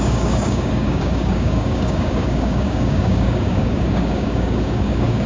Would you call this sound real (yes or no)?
no